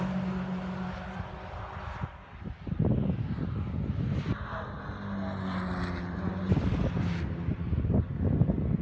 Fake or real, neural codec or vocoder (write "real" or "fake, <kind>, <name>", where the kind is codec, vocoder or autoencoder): real